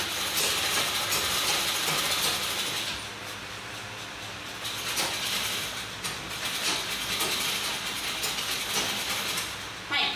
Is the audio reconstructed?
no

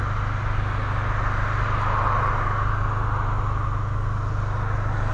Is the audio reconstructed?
no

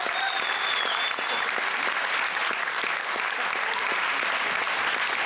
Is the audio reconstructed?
no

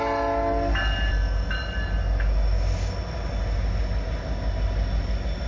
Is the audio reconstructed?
no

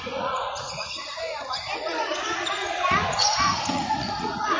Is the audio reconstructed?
yes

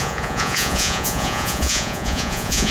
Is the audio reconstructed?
yes